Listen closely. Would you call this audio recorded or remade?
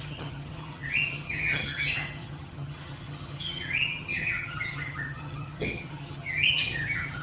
remade